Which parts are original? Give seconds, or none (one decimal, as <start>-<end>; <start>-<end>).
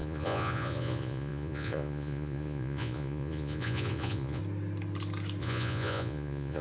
4.4-5.4